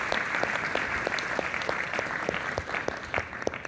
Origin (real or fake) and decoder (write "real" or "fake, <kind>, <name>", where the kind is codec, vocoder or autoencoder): real